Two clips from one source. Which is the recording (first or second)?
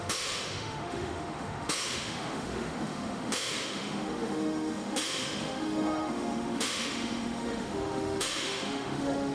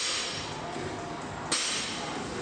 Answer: second